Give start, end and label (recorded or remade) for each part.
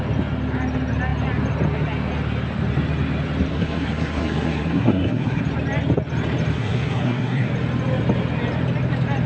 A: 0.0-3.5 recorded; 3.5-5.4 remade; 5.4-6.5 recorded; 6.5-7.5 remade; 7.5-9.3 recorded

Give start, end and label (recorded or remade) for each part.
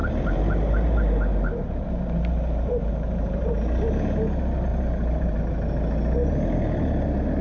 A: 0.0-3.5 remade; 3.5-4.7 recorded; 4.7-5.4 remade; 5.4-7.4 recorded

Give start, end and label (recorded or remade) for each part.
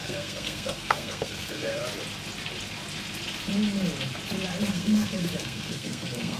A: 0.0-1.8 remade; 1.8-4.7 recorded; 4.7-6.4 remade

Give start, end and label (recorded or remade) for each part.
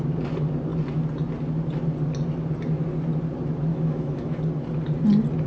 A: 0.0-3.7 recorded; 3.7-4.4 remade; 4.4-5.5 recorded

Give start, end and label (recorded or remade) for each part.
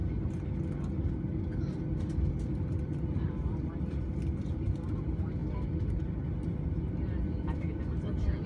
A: 0.0-8.5 recorded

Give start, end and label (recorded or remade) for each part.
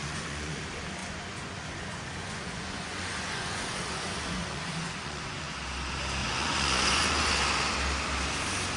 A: 0.0-0.6 remade; 0.6-1.0 recorded; 1.0-5.5 remade; 5.5-6.2 recorded; 6.2-7.3 remade; 7.3-8.8 recorded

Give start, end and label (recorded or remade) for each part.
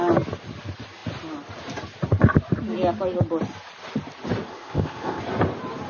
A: 0.0-4.5 recorded; 4.5-5.2 remade; 5.2-5.9 recorded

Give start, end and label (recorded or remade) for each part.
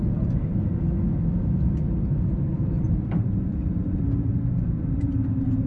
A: 0.0-0.5 remade; 0.5-1.4 recorded; 1.4-5.7 remade